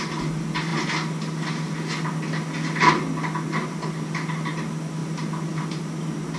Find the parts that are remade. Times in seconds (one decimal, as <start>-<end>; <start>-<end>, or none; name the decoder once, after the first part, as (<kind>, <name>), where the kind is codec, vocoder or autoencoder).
none